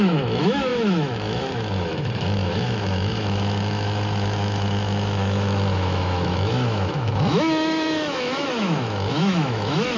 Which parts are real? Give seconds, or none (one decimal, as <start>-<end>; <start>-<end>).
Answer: none